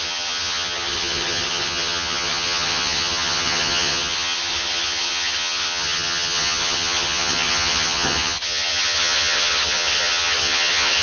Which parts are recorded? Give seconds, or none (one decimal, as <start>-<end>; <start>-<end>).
none

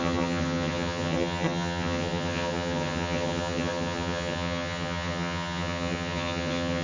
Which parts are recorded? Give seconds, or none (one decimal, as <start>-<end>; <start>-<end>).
none